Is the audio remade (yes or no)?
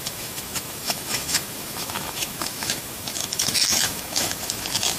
yes